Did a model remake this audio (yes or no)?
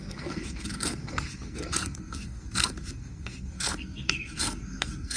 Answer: yes